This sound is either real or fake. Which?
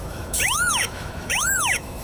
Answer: fake